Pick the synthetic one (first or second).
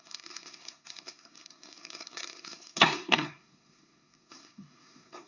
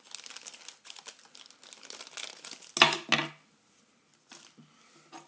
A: first